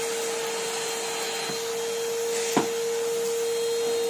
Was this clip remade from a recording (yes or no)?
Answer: no